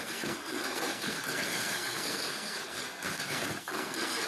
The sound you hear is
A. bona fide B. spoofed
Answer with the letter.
B